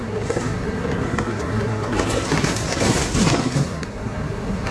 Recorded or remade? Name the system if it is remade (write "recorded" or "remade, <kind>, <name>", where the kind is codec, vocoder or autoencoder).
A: remade, codec, SNAC